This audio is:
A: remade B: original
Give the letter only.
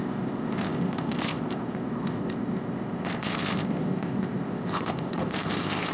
A